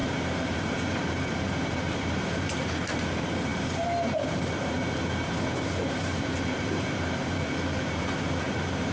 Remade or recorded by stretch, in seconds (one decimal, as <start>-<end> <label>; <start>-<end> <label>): 0.0-8.9 remade